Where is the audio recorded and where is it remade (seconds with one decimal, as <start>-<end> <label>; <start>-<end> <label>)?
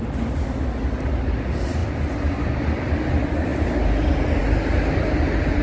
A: 0.0-5.6 recorded